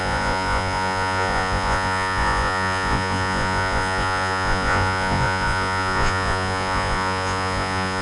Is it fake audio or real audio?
fake